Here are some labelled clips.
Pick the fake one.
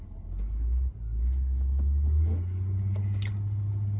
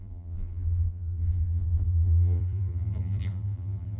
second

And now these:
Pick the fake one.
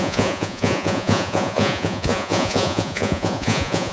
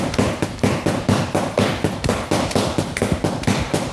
first